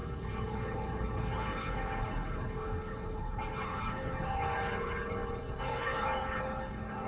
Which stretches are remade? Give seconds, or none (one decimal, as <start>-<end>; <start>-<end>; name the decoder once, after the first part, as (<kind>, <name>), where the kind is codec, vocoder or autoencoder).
0.0-7.1 (codec, HILCodec)